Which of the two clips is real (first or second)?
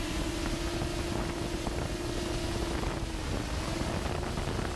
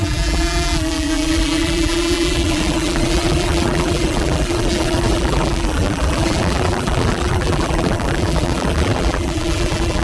first